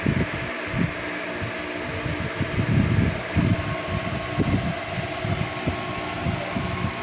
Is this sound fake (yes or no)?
no